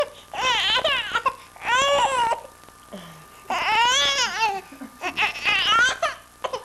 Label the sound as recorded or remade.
recorded